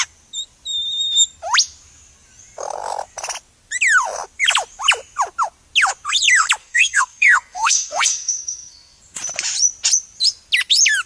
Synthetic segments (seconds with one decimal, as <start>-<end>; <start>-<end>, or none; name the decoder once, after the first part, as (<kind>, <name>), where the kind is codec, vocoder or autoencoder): 6.6-9.0 (codec, SNAC)